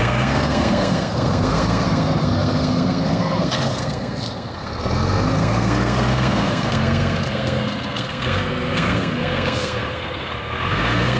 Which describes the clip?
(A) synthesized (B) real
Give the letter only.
A